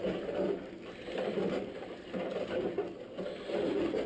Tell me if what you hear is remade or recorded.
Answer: recorded